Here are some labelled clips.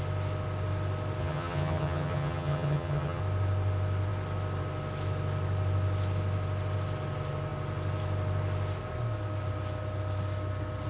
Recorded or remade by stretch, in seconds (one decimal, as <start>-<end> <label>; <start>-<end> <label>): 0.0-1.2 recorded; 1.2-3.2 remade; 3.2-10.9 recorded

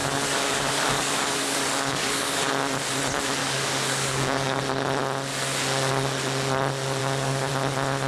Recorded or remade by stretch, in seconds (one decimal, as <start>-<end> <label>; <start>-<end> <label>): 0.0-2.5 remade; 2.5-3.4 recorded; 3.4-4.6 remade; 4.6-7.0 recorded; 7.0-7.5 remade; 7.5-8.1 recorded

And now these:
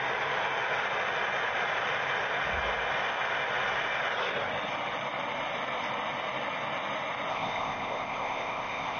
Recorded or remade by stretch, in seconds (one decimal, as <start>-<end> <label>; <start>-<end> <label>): 0.0-7.3 recorded; 7.3-9.0 remade

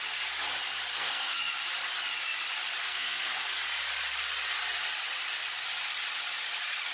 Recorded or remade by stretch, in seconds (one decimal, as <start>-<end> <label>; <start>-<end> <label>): 0.0-0.9 recorded; 0.9-1.5 remade; 1.5-2.8 recorded; 2.8-3.6 remade; 3.6-6.9 recorded